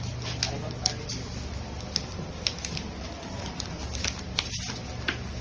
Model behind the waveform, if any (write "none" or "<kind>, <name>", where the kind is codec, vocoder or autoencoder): none